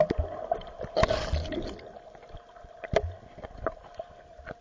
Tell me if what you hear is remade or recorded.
recorded